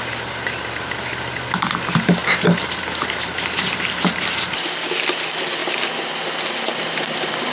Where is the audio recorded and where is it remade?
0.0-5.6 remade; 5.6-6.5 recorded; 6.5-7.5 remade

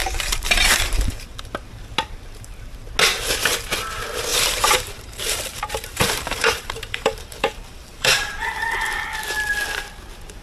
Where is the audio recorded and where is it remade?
0.0-1.5 remade; 1.5-4.3 recorded; 4.3-8.5 remade; 8.5-10.4 recorded

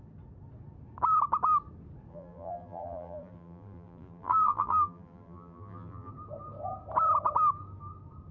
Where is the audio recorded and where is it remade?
0.0-2.1 recorded; 2.1-6.1 remade; 6.1-8.3 recorded

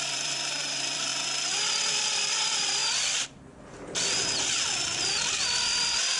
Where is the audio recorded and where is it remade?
0.0-1.1 remade; 1.1-1.9 recorded; 1.9-2.8 remade; 2.8-5.0 recorded; 5.0-6.2 remade

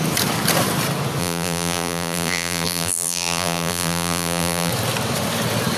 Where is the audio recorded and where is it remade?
0.0-1.2 recorded; 1.2-4.7 remade; 4.7-5.8 recorded

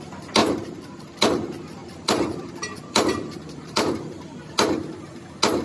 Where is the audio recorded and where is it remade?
0.0-1.8 recorded; 1.8-3.9 remade; 3.9-5.6 recorded

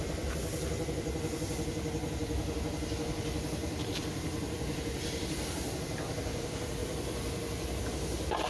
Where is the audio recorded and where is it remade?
0.0-2.2 recorded; 2.2-2.7 remade; 2.7-3.6 recorded; 3.6-5.8 remade; 5.8-6.8 recorded; 6.8-7.8 remade; 7.8-8.5 recorded

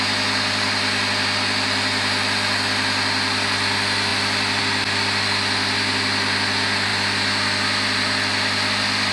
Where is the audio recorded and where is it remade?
0.0-9.1 recorded